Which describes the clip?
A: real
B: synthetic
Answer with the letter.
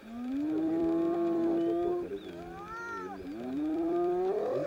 B